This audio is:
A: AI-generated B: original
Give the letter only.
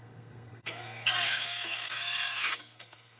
A